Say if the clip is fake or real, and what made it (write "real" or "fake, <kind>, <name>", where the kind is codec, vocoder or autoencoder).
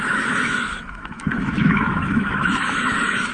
fake, autoencoder, DAC-VAE